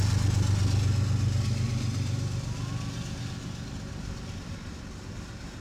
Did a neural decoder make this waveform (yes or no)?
no